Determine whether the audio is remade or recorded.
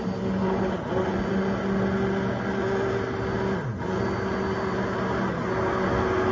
recorded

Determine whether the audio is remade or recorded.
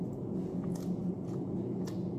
remade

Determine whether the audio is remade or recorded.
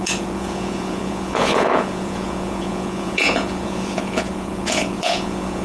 remade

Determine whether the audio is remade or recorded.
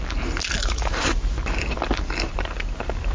recorded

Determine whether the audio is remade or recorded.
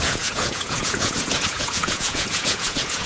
remade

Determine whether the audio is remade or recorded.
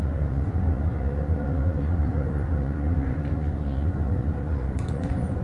remade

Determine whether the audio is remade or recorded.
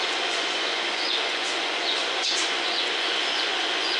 remade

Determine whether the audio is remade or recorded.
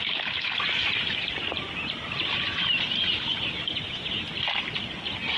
recorded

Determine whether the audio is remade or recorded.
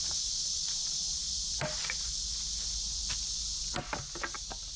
recorded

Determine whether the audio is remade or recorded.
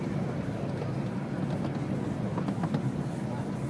recorded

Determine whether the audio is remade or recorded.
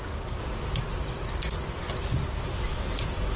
recorded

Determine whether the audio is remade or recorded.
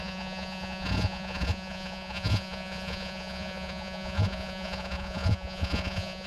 remade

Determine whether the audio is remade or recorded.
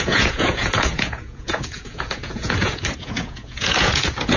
remade